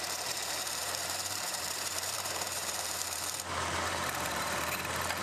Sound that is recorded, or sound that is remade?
remade